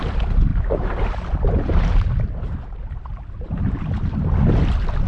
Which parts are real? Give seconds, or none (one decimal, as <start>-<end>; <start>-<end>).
0.0-5.1